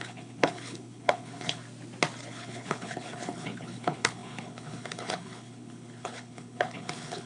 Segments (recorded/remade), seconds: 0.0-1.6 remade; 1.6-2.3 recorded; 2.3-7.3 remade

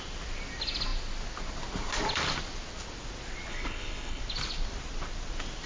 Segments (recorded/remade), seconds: 0.0-3.5 recorded; 3.5-4.2 remade; 4.2-5.7 recorded